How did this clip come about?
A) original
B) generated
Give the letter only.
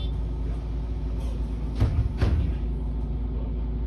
A